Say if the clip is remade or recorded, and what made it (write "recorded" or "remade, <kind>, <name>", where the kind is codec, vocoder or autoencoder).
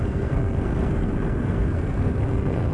remade, codec, SNAC